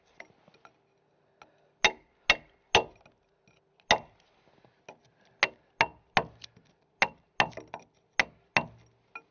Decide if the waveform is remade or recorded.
recorded